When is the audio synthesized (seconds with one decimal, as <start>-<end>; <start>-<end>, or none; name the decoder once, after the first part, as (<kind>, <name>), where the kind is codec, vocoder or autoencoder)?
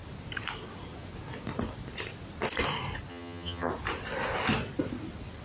3.1-3.7 (vocoder, HiFi-GAN)